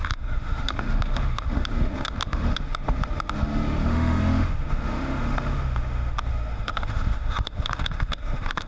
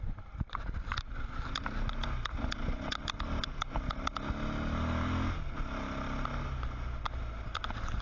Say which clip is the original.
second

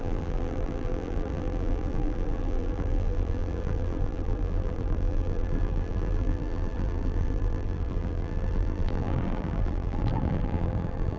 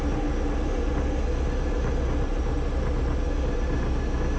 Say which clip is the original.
second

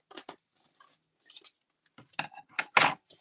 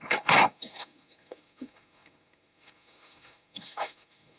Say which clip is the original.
first